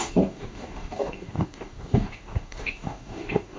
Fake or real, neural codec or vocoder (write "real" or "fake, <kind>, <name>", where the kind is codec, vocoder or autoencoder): fake, codec, DAC